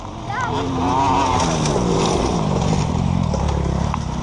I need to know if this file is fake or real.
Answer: real